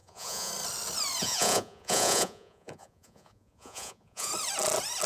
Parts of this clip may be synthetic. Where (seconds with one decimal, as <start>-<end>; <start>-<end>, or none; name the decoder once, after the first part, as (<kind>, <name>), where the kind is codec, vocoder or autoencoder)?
0.0-0.5 (vocoder, Vocos); 1.2-4.3